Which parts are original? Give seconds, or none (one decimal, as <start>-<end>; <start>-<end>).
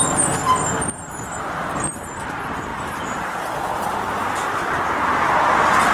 0.0-0.4; 1.4-2.7; 4.7-5.9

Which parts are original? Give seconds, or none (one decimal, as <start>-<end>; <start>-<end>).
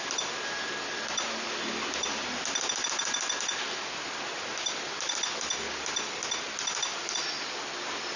0.0-8.2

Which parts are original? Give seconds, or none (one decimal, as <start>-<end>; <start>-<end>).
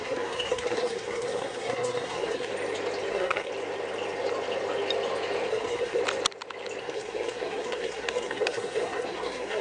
2.5-3.1; 3.5-5.5; 6.0-6.8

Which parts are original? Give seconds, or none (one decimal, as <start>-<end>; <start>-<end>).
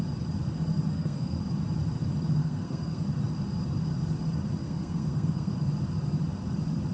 0.0-0.9; 1.4-2.4; 3.0-4.6; 5.5-6.9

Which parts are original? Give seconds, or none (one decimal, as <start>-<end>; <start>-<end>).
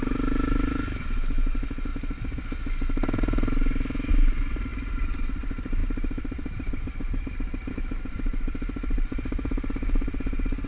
1.9-4.1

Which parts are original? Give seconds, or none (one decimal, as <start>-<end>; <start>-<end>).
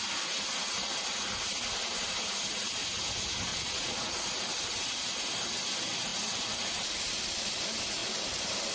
0.0-3.5; 4.0-8.7